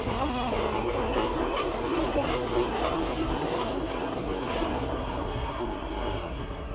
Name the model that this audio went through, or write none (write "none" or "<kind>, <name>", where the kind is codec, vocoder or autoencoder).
codec, SNAC